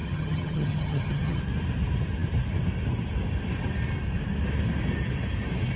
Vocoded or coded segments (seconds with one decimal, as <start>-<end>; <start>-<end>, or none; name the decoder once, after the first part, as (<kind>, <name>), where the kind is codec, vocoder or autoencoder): 0.0-1.4 (vocoder, HiFi-GAN)